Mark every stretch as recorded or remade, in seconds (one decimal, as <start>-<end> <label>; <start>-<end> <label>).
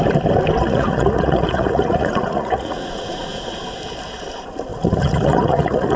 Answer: 0.0-0.6 recorded; 0.6-3.4 remade; 3.4-4.7 recorded; 4.7-6.0 remade